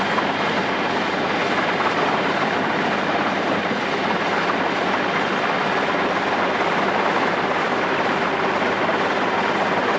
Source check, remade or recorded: recorded